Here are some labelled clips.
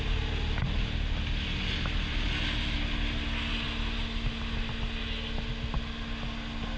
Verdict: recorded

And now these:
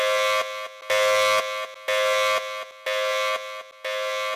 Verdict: recorded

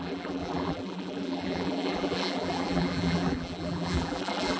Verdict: remade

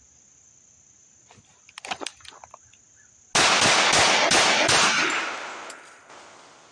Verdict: recorded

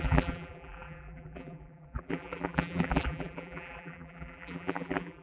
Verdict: remade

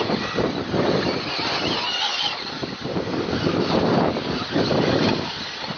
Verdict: remade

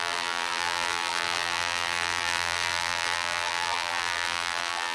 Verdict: remade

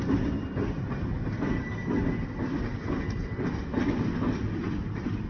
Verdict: recorded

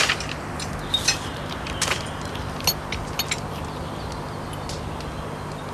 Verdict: recorded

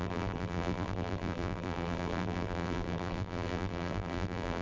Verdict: remade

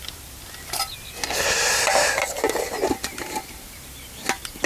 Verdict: recorded